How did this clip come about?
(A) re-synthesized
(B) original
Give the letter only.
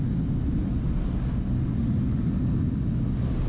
B